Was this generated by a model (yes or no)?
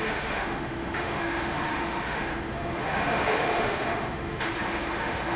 yes